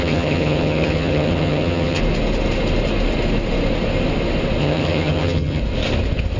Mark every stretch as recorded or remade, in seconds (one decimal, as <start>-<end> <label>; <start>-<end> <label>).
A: 0.0-2.0 remade; 2.0-4.6 recorded; 4.6-5.6 remade; 5.6-6.4 recorded